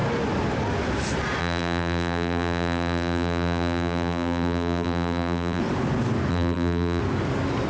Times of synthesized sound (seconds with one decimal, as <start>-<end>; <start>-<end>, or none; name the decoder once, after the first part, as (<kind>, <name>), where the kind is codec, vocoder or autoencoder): 1.4-5.6 (vocoder, BigVGAN v2); 6.3-7.0